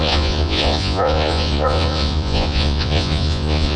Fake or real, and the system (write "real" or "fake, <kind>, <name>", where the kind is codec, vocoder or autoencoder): fake, vocoder, Vocos